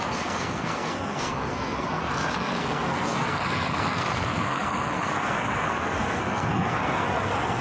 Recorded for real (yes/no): no